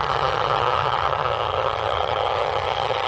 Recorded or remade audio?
remade